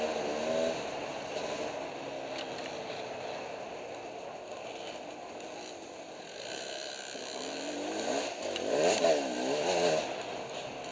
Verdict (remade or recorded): recorded